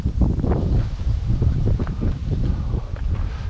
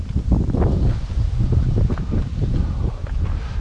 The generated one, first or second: first